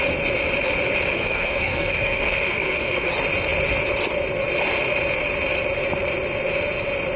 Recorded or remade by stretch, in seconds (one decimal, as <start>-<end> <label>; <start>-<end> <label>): 0.0-1.1 recorded; 1.1-3.1 remade; 3.1-7.2 recorded